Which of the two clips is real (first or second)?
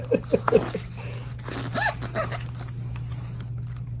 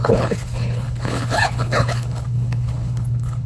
first